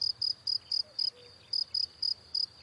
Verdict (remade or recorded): recorded